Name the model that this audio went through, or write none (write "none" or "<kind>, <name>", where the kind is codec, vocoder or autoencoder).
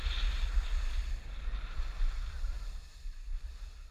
none